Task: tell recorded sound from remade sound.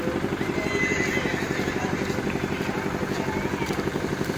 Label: recorded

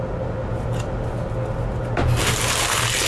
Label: recorded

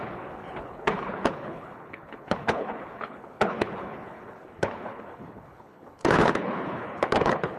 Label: remade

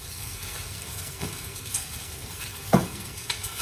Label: remade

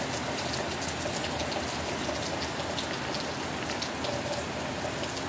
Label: recorded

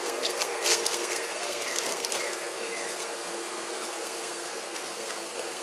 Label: remade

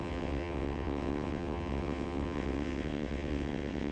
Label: remade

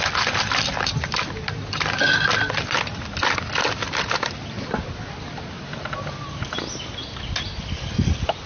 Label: recorded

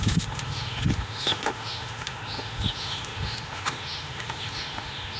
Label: remade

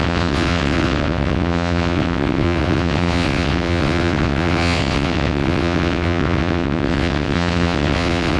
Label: remade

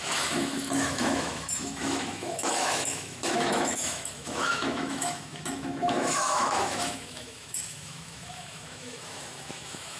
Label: remade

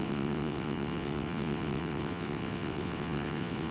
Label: remade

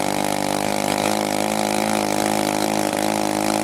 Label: recorded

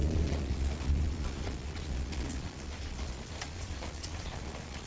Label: remade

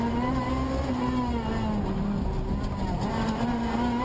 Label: recorded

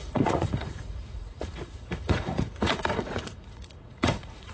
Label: remade